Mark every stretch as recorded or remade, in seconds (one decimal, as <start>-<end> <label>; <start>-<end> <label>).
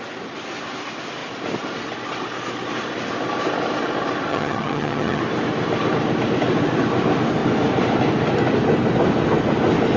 0.0-4.3 recorded; 4.3-5.2 remade; 5.2-10.0 recorded